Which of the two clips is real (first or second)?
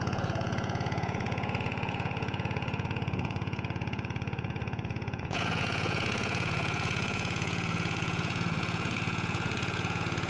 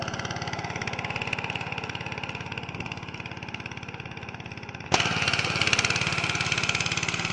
second